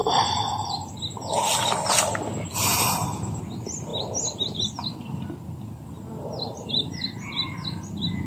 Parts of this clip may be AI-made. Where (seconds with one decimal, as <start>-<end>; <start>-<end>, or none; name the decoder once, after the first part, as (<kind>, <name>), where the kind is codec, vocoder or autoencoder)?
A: 0.0-0.9 (vocoder, BigVGAN v2)